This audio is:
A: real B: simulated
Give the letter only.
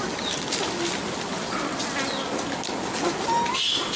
A